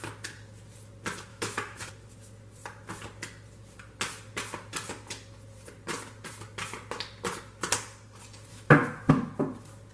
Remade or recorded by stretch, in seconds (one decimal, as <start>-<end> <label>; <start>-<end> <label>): 0.0-1.3 recorded; 1.3-1.9 remade; 1.9-8.5 recorded; 8.5-9.1 remade; 9.1-9.9 recorded